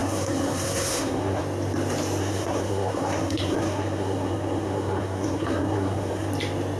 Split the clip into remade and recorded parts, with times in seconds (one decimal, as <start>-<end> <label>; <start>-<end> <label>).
0.0-1.4 remade; 1.4-2.2 recorded; 2.2-6.3 remade; 6.3-6.8 recorded